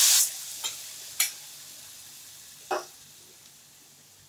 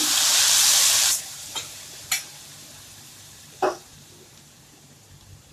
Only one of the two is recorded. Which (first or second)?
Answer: first